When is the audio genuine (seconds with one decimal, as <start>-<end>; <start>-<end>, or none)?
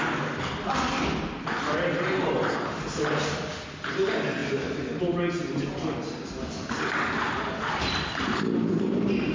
0.0-9.3